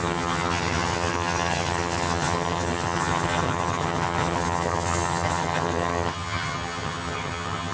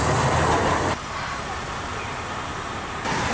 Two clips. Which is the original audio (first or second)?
second